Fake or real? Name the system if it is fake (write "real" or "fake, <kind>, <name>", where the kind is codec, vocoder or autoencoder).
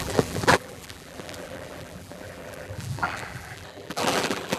fake, vocoder, BigVGAN v2